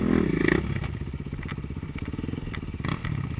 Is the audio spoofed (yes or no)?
no